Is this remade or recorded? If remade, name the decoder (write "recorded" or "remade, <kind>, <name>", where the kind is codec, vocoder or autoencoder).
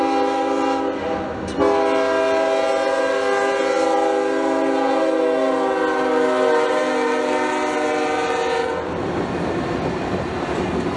recorded